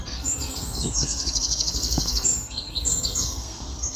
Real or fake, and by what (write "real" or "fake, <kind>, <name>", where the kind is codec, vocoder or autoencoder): fake, codec, SNAC